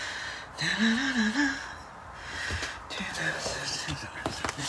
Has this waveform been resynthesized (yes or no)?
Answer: no